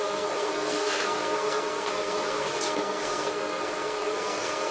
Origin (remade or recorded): remade